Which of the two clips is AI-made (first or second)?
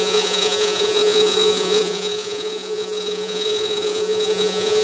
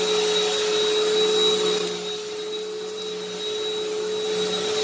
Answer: first